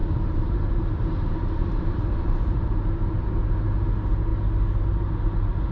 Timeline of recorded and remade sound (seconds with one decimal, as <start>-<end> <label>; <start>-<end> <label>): 0.0-3.4 remade; 3.4-5.7 recorded